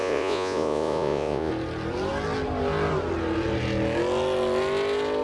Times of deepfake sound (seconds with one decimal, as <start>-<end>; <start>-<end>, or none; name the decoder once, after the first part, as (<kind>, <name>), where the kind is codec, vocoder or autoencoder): 0.0-1.5 (vocoder, Vocos)